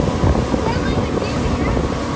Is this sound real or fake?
real